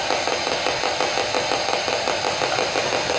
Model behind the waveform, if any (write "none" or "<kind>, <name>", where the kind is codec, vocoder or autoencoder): none